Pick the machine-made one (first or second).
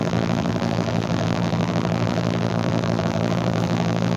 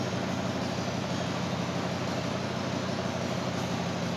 first